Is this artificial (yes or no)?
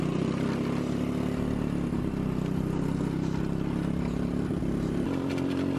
no